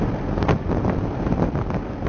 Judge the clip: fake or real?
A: real